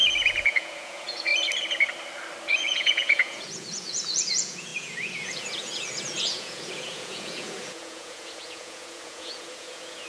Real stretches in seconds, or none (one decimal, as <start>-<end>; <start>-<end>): 1.3-2.6